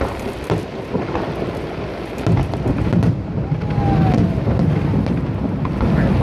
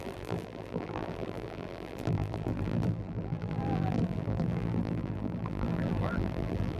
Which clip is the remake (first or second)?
second